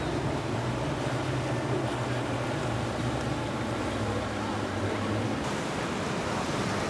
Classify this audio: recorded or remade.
recorded